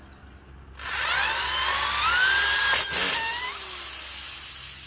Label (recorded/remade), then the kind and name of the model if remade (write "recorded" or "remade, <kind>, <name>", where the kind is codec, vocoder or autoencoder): recorded